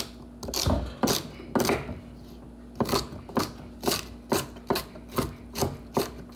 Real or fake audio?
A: real